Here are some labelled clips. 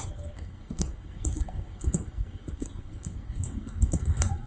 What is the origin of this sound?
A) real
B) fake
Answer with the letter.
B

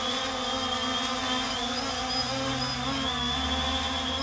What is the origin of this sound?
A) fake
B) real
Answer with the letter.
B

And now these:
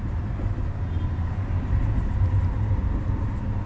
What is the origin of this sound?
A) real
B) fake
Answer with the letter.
A